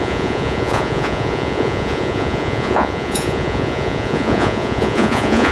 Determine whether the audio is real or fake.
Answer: fake